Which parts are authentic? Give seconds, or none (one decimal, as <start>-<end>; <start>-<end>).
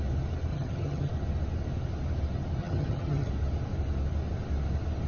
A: 0.0-0.5; 1.1-2.6; 3.3-5.1